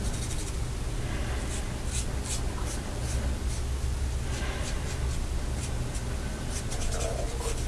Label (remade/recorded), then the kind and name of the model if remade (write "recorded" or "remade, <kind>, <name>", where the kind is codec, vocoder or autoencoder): recorded